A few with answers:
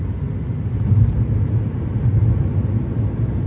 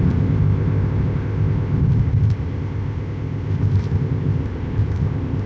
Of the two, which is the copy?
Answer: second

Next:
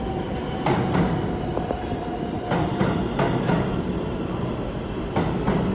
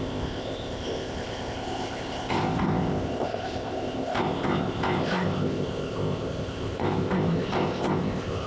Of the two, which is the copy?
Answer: second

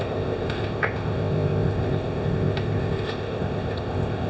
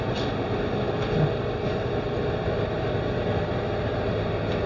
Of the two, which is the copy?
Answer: first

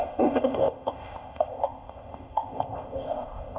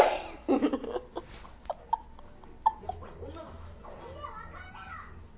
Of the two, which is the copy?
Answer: first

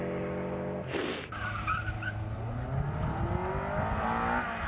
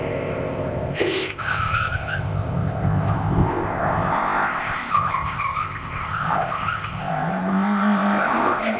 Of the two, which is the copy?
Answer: second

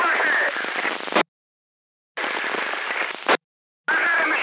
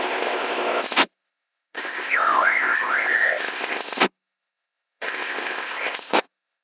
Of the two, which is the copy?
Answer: second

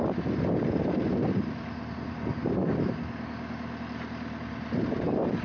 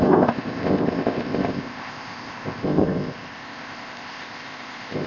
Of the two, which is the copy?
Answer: second